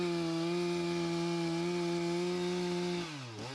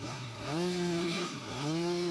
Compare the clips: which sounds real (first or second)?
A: first